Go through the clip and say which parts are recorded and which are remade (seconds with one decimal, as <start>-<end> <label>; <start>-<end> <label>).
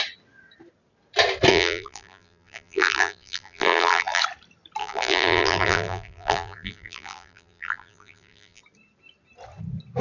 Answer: 0.0-1.5 recorded; 1.5-4.2 remade; 4.2-4.8 recorded; 4.8-8.6 remade; 8.6-10.0 recorded